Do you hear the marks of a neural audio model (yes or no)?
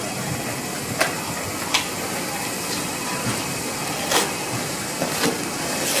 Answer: no